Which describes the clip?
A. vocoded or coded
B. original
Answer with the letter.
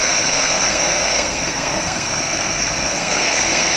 A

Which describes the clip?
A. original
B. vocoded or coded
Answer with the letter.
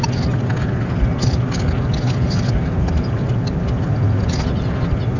A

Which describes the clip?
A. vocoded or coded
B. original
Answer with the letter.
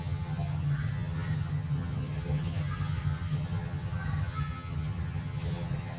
A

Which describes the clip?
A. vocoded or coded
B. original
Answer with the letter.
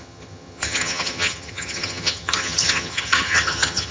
A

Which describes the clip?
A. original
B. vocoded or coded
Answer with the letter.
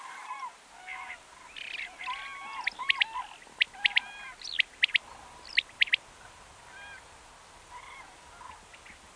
A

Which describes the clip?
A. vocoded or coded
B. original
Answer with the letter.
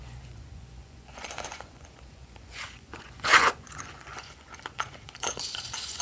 A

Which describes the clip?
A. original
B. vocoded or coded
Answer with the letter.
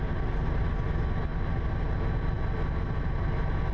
A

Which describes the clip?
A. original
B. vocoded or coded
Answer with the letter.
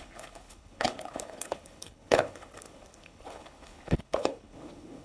B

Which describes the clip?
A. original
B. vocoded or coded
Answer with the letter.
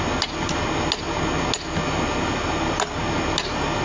A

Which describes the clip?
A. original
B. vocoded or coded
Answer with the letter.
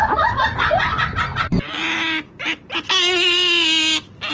A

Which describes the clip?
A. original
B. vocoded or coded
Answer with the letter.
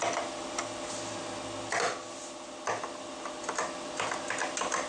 A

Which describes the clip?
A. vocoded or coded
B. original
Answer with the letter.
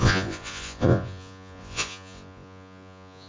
A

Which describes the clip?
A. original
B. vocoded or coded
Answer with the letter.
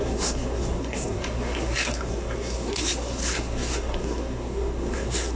B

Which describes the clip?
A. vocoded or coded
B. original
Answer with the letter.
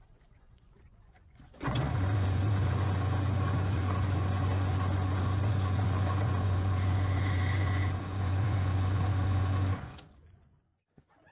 A